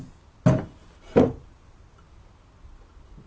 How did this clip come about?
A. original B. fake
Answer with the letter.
A